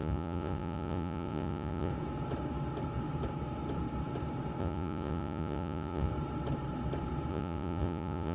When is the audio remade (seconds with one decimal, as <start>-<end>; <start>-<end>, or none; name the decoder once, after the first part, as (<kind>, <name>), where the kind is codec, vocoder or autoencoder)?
0.0-1.9 (vocoder, Vocos); 4.6-6.1; 7.3-8.3